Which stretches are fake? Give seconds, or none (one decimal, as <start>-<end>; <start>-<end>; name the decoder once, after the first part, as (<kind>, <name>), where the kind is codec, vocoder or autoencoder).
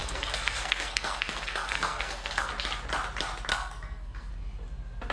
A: 0.0-2.5 (codec, SNAC); 3.5-4.3